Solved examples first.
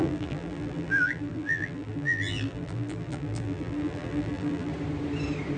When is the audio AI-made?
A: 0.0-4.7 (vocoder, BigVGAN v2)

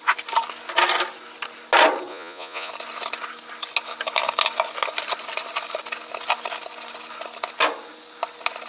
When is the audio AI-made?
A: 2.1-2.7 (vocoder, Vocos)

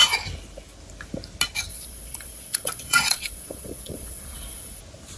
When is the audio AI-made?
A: 1.7-4.8 (vocoder, Vocos)

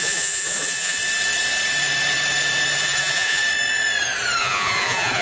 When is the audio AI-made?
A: 0.0-1.0 (vocoder, Vocos); 2.8-3.4; 4.4-5.2

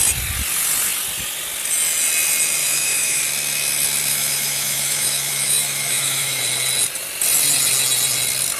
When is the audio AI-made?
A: 2.6-3.2 (autoencoder, DAC-VAE); 4.1-6.4